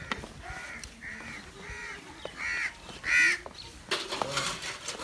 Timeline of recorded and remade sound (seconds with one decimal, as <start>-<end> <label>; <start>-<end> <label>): 0.0-5.0 recorded